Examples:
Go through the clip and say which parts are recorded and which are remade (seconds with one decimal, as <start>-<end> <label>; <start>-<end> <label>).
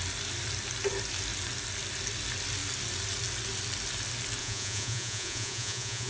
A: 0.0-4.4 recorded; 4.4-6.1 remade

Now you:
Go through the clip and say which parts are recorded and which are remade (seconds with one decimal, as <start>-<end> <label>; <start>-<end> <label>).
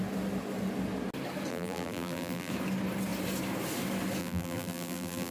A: 0.0-1.5 recorded; 1.5-2.5 remade; 2.5-4.2 recorded; 4.2-5.3 remade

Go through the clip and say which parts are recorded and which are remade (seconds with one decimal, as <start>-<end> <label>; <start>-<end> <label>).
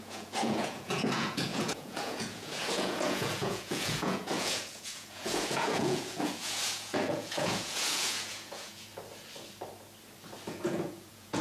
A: 0.0-8.9 remade; 8.9-10.5 recorded; 10.5-11.4 remade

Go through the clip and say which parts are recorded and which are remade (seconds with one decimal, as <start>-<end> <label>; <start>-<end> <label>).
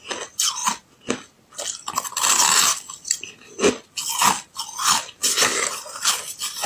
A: 0.0-6.7 recorded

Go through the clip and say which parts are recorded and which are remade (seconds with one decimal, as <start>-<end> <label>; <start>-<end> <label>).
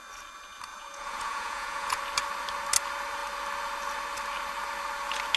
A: 0.0-0.7 recorded; 0.7-2.0 remade; 2.0-5.4 recorded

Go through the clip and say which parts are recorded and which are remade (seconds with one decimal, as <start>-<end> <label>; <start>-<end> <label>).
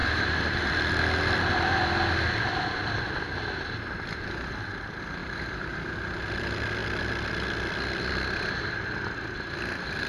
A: 0.0-0.7 remade; 0.7-5.2 recorded; 5.2-5.9 remade; 5.9-10.1 recorded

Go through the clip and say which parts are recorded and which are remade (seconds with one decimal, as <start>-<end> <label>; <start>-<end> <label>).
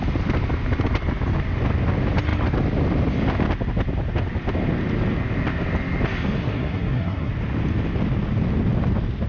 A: 0.0-6.4 recorded; 6.4-7.3 remade; 7.3-9.3 recorded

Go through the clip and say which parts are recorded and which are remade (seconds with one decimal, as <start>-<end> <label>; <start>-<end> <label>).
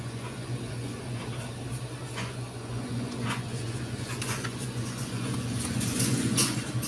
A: 0.0-1.2 remade; 1.2-2.1 recorded; 2.1-6.9 remade